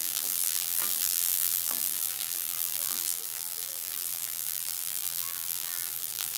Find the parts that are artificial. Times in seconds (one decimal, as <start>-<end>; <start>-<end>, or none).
0.0-6.4